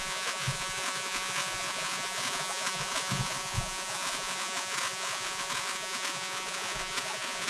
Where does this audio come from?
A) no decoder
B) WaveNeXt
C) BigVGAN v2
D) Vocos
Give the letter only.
D